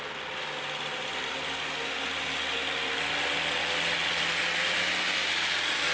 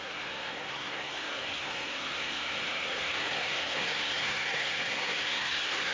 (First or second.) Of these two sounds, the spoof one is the second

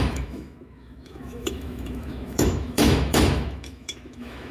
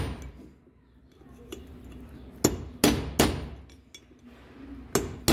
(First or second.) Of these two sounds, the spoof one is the first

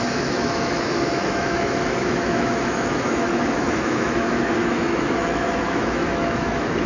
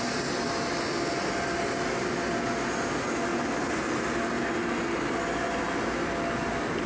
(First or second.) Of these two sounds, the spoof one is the first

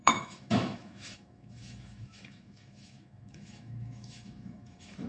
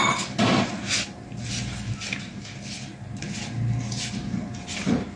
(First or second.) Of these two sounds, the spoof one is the first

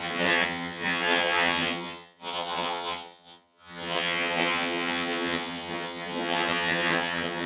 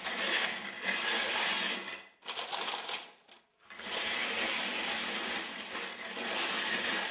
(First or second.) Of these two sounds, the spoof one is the first